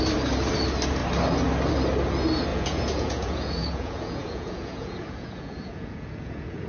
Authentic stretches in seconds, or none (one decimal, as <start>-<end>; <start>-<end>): 0.0-2.5